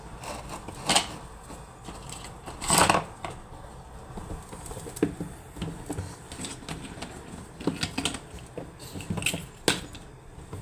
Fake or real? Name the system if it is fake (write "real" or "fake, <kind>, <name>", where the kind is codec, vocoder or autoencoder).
real